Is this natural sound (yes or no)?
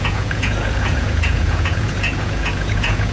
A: no